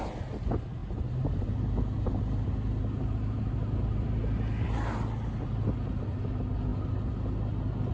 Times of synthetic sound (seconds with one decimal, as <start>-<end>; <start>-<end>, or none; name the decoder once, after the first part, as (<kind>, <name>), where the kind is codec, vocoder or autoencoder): none